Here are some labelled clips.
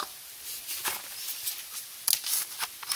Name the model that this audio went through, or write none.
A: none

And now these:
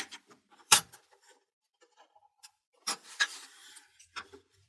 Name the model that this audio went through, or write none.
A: vocoder, BigVGAN v2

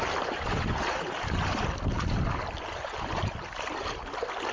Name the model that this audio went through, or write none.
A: none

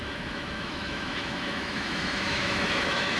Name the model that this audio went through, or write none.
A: autoencoder, DAC-VAE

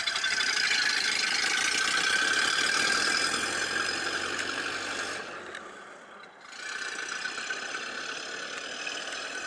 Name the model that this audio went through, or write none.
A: none